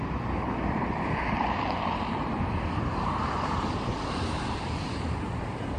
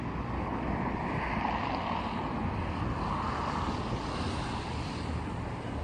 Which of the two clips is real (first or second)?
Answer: second